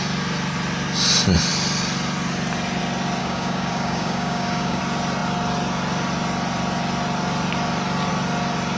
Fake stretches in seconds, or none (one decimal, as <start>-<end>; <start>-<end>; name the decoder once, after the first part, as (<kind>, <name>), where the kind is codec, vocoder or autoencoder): 3.2-4.8 (codec, DAC)

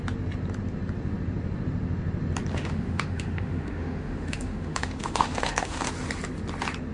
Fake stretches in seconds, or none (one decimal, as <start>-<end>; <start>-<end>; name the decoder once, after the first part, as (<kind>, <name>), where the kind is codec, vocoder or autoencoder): 2.5-5.9 (autoencoder, DAC-VAE)

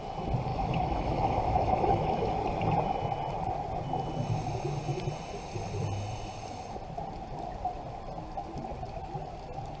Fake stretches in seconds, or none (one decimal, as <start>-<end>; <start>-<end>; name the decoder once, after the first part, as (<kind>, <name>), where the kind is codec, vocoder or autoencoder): 0.5-2.3 (autoencoder, DAC-VAE)

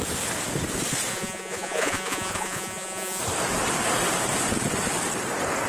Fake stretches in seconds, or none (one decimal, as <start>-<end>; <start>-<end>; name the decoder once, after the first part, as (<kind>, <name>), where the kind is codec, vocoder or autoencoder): 1.1-3.2 (vocoder, Vocos)

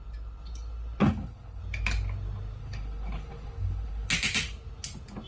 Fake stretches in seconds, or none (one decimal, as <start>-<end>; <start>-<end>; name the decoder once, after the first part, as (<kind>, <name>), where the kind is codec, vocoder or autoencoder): 1.0-1.6 (codec, HILCodec); 2.6-4.1